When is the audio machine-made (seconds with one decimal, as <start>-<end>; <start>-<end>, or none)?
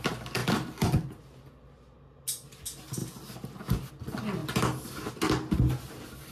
none